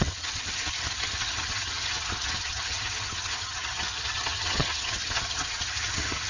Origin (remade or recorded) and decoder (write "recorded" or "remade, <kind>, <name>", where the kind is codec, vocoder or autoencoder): remade, vocoder, HiFi-GAN